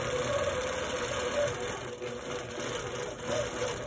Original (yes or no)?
yes